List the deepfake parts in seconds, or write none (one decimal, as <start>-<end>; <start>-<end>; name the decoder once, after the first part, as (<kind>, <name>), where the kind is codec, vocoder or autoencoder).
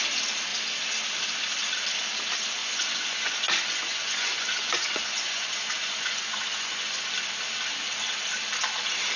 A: 2.6-7.1 (vocoder, Vocos)